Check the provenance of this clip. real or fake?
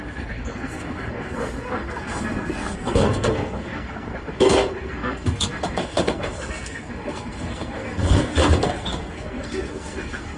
fake